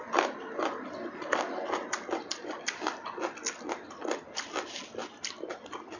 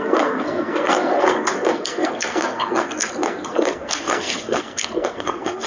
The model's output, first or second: second